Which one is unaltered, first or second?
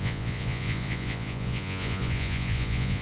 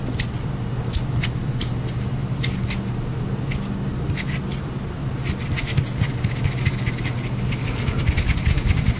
second